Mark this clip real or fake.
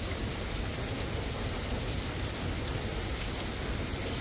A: real